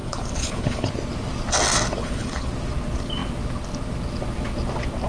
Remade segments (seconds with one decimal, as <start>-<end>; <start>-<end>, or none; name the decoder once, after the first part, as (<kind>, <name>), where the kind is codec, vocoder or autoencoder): 0.0-0.9 (codec, HILCodec); 2.0-2.5

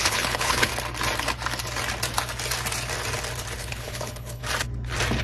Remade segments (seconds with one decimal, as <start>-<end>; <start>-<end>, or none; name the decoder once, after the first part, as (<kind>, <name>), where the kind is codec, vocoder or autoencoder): 0.0-0.7 (codec, HILCodec); 3.6-4.4

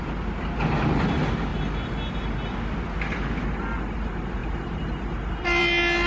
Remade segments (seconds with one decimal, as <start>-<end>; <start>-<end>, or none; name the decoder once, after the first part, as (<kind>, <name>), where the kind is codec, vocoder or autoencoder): none

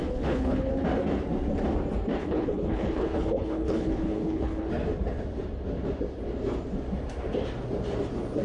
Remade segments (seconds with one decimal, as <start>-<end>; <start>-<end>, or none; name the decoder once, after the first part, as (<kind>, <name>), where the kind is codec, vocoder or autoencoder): 0.0-0.7 (codec, HILCodec); 2.2-4.7

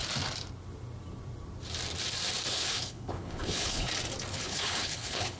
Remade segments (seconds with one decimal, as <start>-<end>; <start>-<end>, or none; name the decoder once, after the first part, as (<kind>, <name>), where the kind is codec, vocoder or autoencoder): 2.5-3.9 (codec, HILCodec); 4.3-5.4